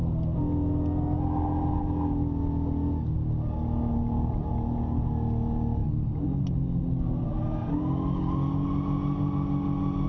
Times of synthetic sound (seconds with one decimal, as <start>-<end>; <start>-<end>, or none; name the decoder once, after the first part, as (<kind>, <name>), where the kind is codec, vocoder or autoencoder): none